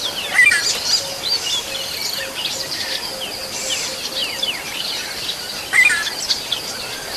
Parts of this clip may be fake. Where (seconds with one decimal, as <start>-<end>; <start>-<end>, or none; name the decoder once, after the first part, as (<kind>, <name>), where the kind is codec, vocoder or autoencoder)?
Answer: 4.2-5.3 (vocoder, BigVGAN v2)